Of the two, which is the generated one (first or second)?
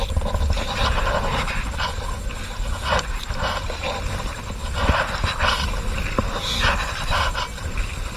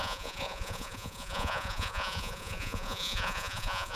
second